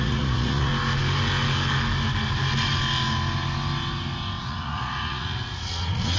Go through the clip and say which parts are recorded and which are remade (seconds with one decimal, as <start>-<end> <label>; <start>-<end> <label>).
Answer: 0.0-0.7 remade; 0.7-4.4 recorded; 4.4-6.2 remade